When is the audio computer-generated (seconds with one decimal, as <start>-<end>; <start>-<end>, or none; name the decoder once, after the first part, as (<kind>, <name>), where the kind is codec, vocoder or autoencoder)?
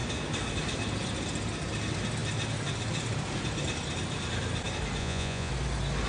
5.0-5.5 (vocoder, Vocos)